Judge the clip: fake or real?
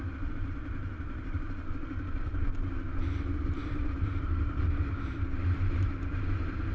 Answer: fake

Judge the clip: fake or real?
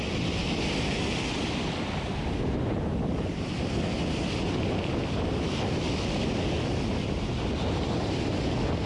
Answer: real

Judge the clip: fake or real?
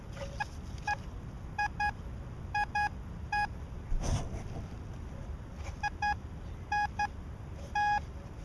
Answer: real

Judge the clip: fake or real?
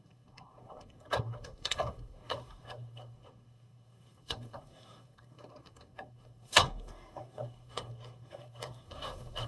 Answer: fake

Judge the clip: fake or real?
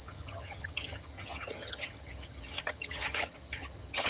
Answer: fake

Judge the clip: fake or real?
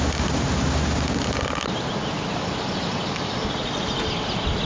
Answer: real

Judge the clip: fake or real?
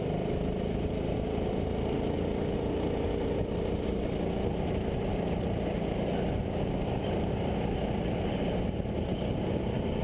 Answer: real